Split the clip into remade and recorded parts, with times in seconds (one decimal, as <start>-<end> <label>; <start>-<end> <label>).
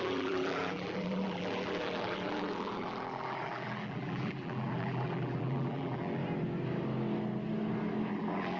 0.0-6.2 remade; 6.2-8.1 recorded; 8.1-8.6 remade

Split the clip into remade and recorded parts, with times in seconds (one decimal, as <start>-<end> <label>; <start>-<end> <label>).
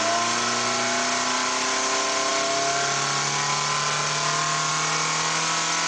0.0-5.9 recorded